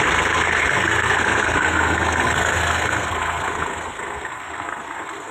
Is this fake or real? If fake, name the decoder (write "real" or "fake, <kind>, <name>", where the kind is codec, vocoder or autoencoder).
fake, codec, SNAC